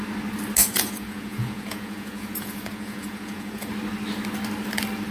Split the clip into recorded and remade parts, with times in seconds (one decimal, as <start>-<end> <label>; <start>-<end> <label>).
0.0-0.6 recorded; 0.6-3.7 remade; 3.7-5.1 recorded